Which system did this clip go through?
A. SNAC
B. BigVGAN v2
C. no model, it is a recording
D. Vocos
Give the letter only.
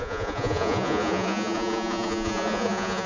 D